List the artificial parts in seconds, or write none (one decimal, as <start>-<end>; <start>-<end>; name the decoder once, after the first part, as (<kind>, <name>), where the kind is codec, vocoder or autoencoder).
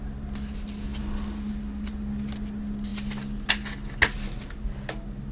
none